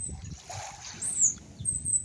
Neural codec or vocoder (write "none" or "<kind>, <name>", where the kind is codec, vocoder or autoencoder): none